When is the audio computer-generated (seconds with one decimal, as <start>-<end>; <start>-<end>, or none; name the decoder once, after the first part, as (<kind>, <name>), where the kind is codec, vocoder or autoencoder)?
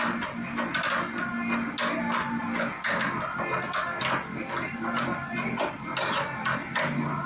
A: none